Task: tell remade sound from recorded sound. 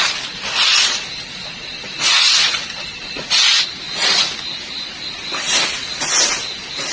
recorded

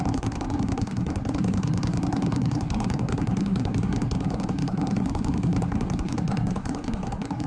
remade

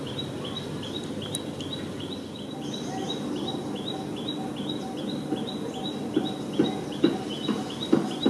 recorded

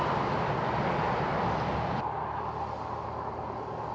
recorded